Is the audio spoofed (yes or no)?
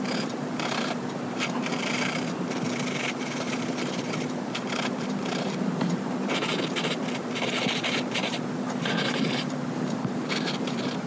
yes